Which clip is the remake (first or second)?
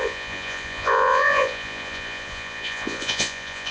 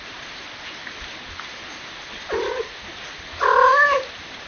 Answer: first